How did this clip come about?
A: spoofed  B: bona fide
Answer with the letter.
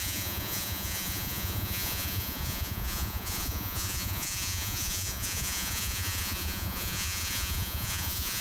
A